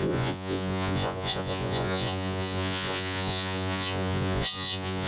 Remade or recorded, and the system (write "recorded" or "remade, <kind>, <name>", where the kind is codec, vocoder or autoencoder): remade, vocoder, Vocos